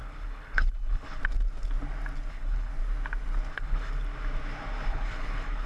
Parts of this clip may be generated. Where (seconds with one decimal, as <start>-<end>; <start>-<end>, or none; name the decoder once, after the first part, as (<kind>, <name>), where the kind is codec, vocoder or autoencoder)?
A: 0.0-1.2 (codec, HILCodec); 2.3-2.7; 3.5-3.9; 4.9-5.7

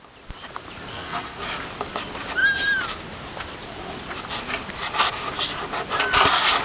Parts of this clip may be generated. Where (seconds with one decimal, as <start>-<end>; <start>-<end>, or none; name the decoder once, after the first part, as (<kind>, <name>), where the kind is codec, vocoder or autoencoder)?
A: 0.9-1.4 (codec, SNAC)

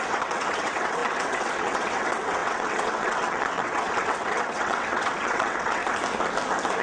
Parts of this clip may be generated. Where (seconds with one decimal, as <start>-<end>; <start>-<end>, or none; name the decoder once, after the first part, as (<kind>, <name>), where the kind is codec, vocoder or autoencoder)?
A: 0.0-5.8 (vocoder, WaveNeXt)

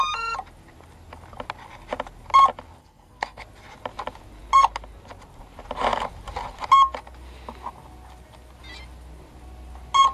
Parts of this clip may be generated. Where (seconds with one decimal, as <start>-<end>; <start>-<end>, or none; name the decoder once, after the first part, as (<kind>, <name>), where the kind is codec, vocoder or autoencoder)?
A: 2.8-3.4 (codec, SNAC)

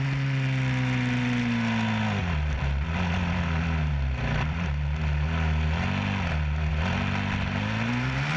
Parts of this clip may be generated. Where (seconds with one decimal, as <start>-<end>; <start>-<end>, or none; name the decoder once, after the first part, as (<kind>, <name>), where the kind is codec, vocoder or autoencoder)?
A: none

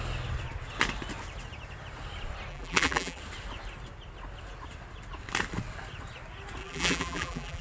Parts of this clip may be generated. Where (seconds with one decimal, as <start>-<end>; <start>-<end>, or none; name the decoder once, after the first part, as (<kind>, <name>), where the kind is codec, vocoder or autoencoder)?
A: 2.5-3.2 (vocoder, BigVGAN v2); 6.6-7.6

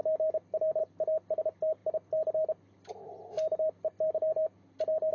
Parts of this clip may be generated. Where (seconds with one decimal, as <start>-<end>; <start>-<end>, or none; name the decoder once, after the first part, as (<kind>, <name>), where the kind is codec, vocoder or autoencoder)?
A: none

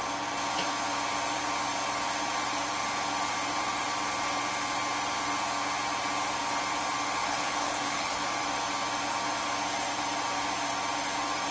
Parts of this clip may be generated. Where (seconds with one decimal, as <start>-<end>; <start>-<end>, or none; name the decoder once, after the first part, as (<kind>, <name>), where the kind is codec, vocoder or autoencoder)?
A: 7.2-8.2 (codec, HILCodec)